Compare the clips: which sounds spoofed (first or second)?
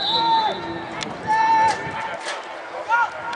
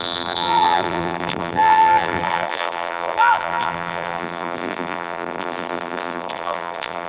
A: second